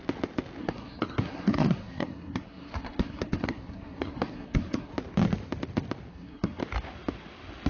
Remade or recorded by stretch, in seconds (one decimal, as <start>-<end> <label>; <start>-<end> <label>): 0.0-0.6 recorded; 0.6-4.9 remade; 4.9-6.1 recorded; 6.1-6.6 remade; 6.6-7.7 recorded